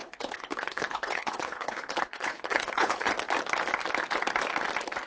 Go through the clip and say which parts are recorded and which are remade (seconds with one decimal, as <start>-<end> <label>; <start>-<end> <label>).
0.0-3.1 remade; 3.1-5.1 recorded